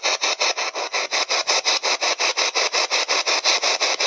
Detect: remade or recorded recorded